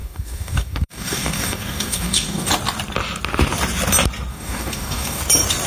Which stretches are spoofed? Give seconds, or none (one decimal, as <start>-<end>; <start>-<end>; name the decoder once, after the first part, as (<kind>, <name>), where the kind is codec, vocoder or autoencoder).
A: 0.0-2.5 (codec, DAC); 4.3-5.2